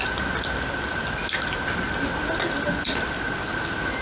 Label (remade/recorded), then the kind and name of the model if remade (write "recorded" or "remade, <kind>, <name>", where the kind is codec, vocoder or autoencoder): recorded